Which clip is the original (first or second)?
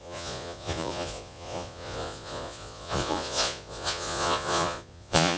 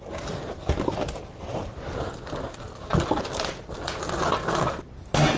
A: second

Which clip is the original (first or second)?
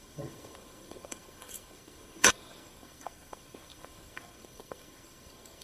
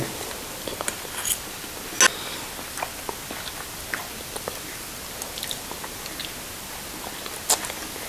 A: second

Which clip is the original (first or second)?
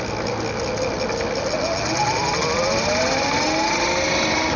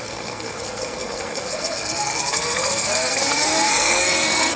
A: first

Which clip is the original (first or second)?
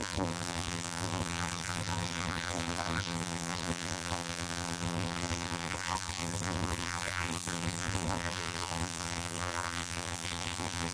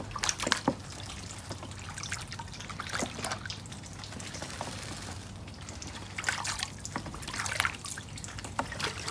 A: second